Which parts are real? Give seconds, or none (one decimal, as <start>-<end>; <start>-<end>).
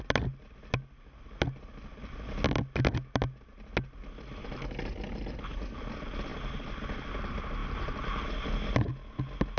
0.0-9.6